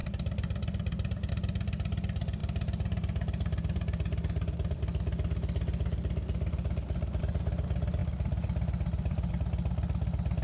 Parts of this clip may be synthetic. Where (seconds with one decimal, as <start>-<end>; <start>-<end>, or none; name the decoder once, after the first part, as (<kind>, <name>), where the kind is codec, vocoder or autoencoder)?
8.0-9.3 (vocoder, BigVGAN v2)